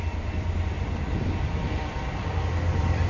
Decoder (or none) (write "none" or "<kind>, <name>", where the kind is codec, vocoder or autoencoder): vocoder, BigVGAN v2